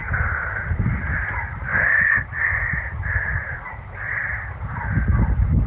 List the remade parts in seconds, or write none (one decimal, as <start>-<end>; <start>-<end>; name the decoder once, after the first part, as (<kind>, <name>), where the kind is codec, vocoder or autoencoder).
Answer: 0.0-0.6 (vocoder, BigVGAN v2)